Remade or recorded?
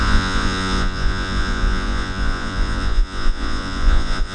remade